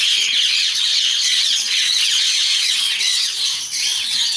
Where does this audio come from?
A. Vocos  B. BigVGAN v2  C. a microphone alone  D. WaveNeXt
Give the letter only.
D